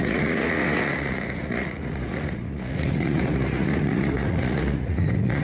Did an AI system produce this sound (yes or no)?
yes